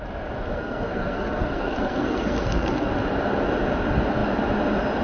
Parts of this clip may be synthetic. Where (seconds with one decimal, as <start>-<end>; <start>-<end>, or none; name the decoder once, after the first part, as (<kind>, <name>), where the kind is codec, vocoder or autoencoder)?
0.5-2.9 (codec, SNAC)